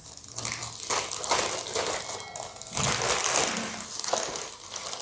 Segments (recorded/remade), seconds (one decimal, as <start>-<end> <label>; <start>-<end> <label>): 0.0-5.0 recorded